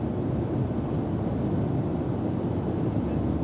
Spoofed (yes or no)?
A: no